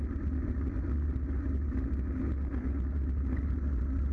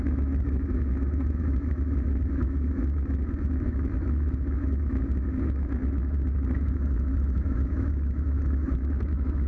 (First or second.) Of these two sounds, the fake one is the second